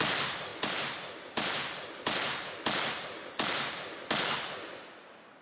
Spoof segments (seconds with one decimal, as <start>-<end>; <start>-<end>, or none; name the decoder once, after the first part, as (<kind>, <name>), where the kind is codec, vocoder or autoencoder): none

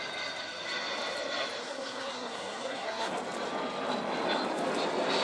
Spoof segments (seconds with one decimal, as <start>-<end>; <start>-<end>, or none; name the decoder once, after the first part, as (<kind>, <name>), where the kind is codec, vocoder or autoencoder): 1.6-3.1 (codec, SNAC)

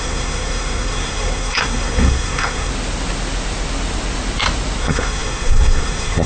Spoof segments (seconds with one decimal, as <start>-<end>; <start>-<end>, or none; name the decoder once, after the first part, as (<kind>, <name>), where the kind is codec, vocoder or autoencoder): 0.0-2.7 (codec, SNAC); 4.8-6.3

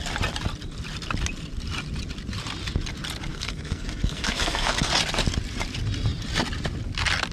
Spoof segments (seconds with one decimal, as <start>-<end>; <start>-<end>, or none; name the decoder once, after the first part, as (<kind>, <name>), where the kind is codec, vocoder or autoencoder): 3.3-4.9 (codec, SNAC)

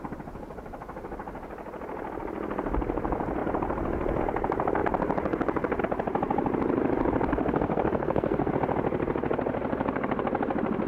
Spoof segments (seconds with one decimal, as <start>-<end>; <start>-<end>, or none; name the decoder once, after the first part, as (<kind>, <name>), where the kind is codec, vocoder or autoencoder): 7.3-8.5 (codec, SNAC)

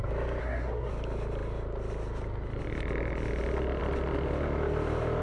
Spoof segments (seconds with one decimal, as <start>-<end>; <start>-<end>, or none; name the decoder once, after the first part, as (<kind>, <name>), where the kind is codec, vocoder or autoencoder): 0.4-0.9 (codec, SNAC)